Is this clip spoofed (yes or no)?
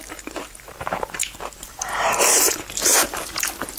yes